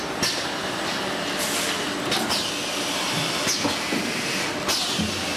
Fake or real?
real